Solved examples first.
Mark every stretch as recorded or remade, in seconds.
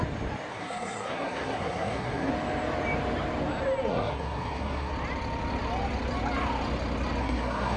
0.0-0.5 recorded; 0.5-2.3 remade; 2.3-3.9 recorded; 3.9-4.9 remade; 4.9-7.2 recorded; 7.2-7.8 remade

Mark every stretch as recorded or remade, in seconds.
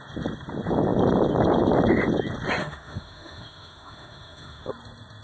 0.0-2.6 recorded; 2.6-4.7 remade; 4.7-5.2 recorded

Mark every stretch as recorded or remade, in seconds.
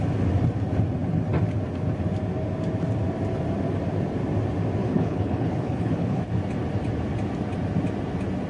0.0-4.8 recorded; 4.8-6.2 remade; 6.2-8.5 recorded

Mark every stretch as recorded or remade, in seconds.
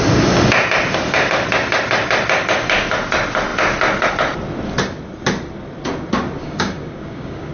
0.0-6.4 recorded; 6.4-7.5 remade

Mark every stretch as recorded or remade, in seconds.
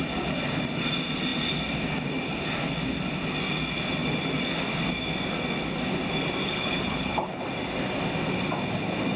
0.0-6.4 recorded; 6.4-7.4 remade; 7.4-9.2 recorded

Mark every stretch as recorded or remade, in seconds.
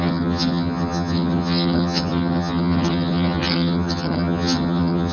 0.0-5.1 remade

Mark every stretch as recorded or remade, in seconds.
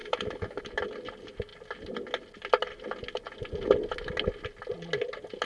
0.0-0.6 remade; 0.6-5.4 recorded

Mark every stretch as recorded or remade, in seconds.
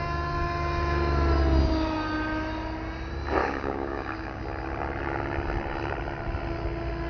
0.0-3.4 recorded; 3.4-4.4 remade; 4.4-7.1 recorded